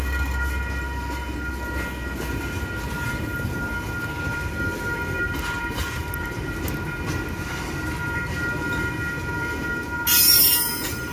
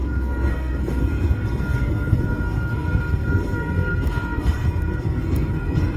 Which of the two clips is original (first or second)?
first